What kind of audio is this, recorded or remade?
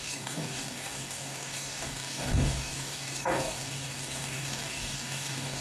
remade